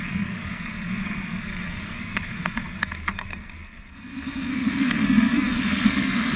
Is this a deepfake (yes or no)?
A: yes